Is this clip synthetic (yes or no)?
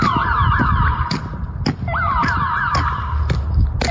no